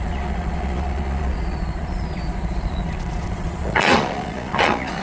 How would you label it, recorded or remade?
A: remade